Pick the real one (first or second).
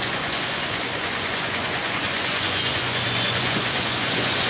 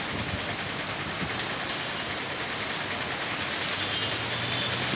second